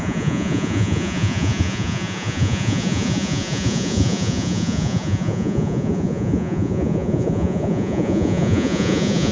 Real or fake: fake